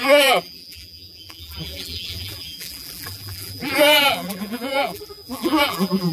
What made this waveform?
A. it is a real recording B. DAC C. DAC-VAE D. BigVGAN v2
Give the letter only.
D